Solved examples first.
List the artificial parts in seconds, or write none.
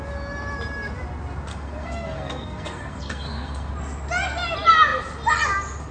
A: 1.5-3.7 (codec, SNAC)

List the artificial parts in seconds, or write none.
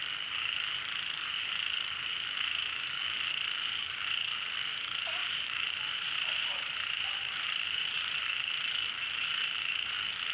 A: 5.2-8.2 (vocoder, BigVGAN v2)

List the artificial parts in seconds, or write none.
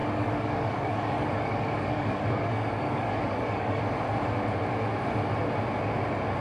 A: 0.0-3.8 (codec, DAC)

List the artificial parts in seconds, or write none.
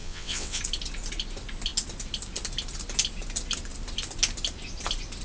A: 0.0-0.6 (vocoder, WaveNeXt)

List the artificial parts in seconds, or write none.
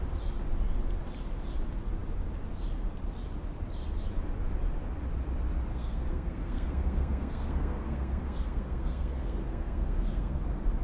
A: 5.7-10.4 (codec, SNAC)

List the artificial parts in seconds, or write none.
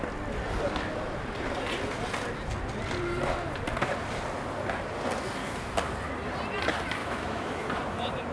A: 7.0-7.7 (autoencoder, DAC-VAE)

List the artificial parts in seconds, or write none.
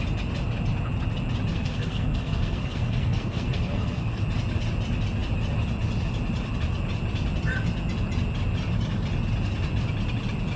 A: 1.5-4.2 (codec, SNAC)